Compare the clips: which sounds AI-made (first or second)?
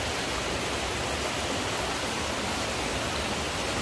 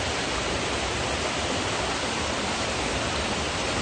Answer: second